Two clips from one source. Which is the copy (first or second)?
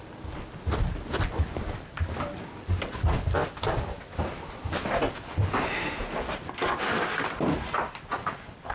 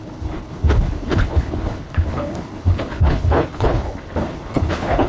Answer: second